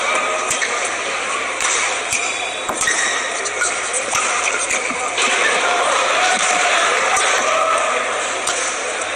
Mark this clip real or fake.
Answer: fake